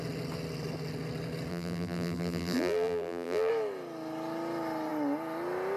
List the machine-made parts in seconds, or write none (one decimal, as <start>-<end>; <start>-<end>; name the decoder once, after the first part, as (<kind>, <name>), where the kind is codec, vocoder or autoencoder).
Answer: 1.5-3.5 (vocoder, BigVGAN v2)